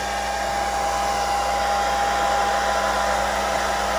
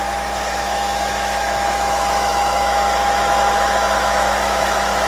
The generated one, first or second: second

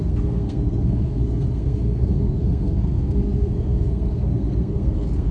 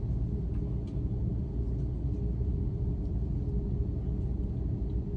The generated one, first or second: first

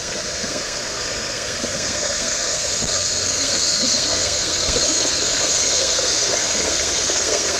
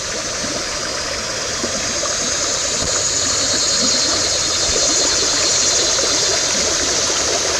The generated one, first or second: first